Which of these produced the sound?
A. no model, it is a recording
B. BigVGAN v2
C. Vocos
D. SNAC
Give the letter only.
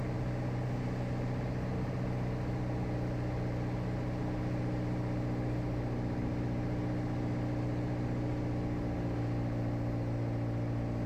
A